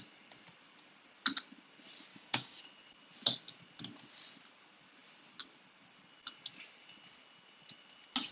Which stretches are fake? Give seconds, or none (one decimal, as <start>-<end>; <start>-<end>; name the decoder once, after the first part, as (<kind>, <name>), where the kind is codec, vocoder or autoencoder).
2.1-2.6 (codec, DAC)